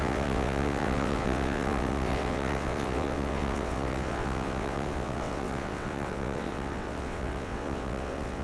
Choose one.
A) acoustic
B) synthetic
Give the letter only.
B